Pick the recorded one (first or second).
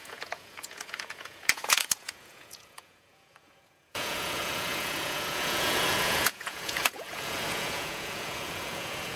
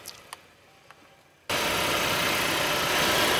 second